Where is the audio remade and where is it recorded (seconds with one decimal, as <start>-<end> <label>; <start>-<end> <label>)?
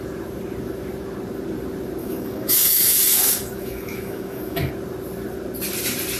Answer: 0.0-2.0 recorded; 2.0-4.7 remade; 4.7-6.2 recorded